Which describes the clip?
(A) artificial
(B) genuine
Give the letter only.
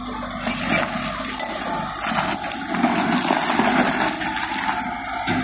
B